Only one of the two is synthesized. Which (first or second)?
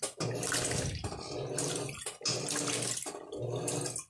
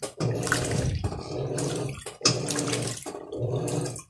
second